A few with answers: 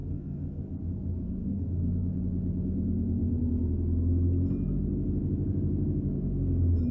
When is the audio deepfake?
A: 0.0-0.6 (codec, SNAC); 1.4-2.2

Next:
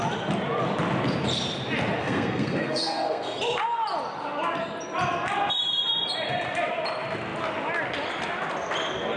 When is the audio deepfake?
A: 2.0-3.4 (codec, SNAC)

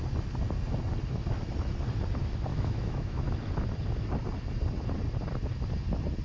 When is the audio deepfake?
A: 2.5-3.4 (autoencoder, DAC-VAE)

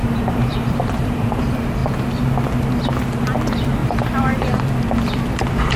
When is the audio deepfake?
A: 0.0-1.4 (vocoder, BigVGAN v2); 3.8-4.6

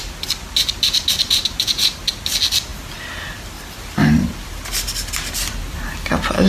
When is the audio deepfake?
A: 1.4-2.0 (vocoder, BigVGAN v2)